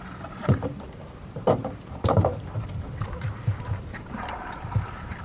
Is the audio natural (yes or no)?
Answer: no